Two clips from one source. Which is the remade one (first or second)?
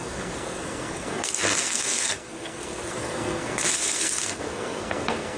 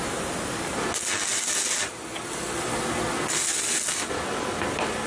first